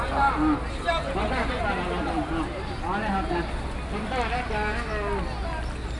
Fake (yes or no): no